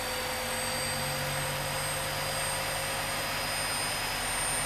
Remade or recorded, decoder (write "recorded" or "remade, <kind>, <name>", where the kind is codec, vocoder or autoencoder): recorded